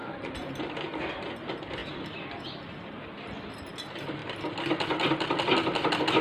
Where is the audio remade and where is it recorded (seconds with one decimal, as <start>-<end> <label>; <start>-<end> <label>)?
0.0-1.8 recorded; 1.8-2.4 remade; 2.4-6.2 recorded

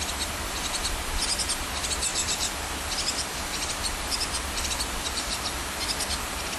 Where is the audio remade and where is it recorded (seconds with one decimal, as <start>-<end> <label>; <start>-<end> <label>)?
0.0-2.1 recorded; 2.1-5.8 remade; 5.8-6.6 recorded

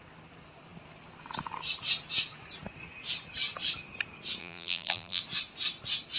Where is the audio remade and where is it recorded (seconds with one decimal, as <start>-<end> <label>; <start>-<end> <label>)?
0.0-4.4 recorded; 4.4-5.2 remade; 5.2-6.2 recorded

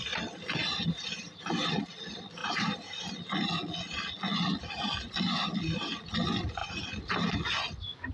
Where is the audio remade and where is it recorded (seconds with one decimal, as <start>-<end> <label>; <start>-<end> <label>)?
0.0-0.6 recorded; 0.6-1.7 remade; 1.7-2.4 recorded; 2.4-3.1 remade; 3.1-6.6 recorded; 6.6-7.1 remade; 7.1-8.1 recorded

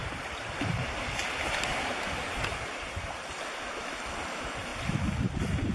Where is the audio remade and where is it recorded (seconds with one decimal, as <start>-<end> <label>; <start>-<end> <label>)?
0.0-3.3 remade; 3.3-5.7 recorded

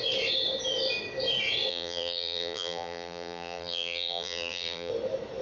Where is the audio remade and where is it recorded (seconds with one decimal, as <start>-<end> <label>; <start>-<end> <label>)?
0.0-1.7 recorded; 1.7-4.9 remade; 4.9-5.4 recorded

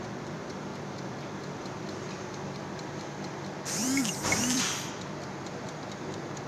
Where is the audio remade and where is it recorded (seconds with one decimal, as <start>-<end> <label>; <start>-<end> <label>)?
0.0-6.5 remade